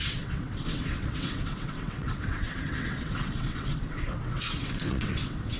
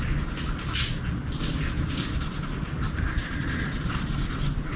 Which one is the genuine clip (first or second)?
second